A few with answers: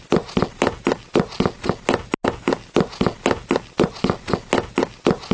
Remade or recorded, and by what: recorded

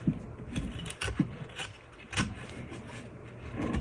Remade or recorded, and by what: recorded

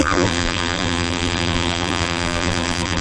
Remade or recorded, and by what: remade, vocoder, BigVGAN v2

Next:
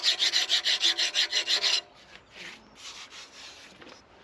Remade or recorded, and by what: recorded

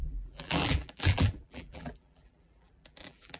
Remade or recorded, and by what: remade, vocoder, BigVGAN v2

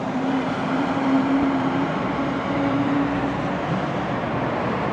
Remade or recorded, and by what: remade, vocoder, BigVGAN v2